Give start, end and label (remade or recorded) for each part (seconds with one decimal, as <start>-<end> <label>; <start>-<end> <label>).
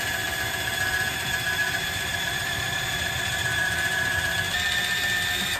0.0-1.6 recorded; 1.6-4.3 remade; 4.3-5.6 recorded